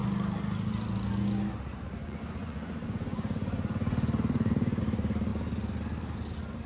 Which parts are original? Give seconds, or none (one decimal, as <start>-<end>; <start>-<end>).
0.0-2.0; 4.8-6.7

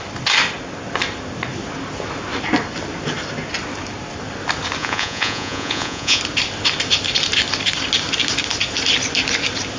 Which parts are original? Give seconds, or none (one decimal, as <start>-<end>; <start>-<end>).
0.0-4.8; 6.2-9.8

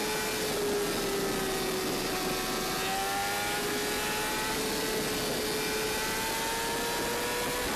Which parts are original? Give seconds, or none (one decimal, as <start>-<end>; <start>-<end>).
0.0-7.8

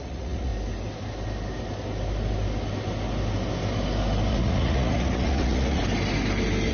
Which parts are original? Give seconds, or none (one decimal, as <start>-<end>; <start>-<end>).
0.5-4.3; 5.8-6.7

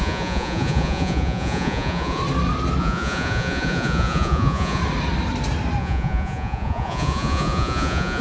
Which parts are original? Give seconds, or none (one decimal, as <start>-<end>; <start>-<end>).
2.2-2.8; 4.8-5.8